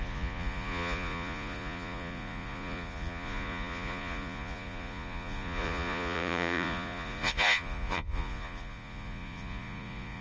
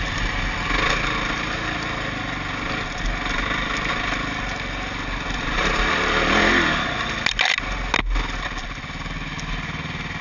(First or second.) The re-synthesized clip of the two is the first